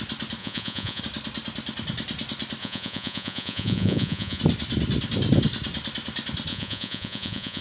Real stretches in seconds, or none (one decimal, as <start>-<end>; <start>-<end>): 0.0-0.4; 1.0-2.6; 4.4-6.5